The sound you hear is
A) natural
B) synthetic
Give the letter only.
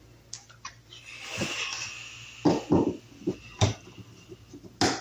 A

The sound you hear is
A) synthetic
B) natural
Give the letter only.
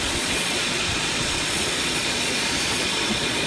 A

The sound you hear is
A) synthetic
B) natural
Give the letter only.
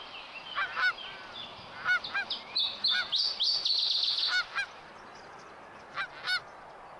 B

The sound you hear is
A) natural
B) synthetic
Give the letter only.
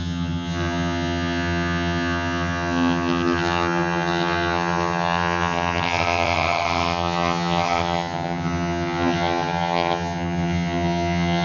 B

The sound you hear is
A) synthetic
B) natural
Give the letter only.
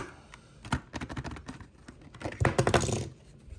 B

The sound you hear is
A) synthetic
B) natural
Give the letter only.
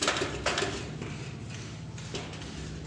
B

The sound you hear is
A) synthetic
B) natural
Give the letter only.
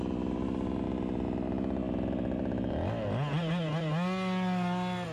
B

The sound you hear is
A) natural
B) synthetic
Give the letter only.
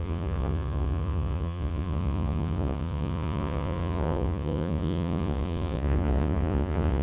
B